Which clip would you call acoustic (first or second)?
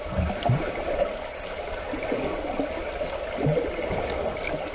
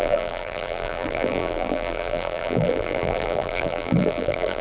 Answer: first